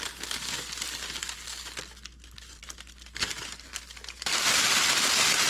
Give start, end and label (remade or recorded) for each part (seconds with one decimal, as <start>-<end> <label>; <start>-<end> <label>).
0.0-5.5 recorded